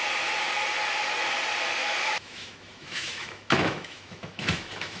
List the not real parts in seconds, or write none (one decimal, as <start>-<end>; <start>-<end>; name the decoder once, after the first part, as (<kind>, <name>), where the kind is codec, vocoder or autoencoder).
1.8-5.0 (autoencoder, DAC-VAE)